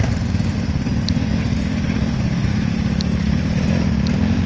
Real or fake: real